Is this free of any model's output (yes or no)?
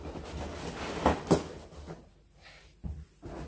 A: yes